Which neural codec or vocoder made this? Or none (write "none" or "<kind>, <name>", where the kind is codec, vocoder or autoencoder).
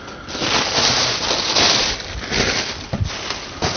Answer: none